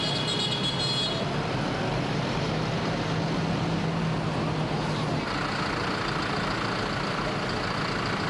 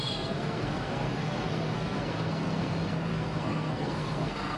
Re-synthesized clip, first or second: second